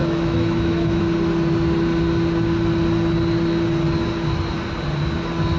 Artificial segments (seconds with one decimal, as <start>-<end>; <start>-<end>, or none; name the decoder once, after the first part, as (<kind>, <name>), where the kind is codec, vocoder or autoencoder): 0.0-1.0 (autoencoder, DAC-VAE)